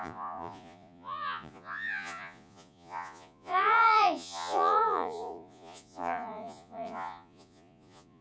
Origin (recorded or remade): remade